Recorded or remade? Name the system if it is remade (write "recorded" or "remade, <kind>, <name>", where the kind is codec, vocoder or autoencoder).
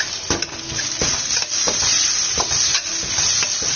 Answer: recorded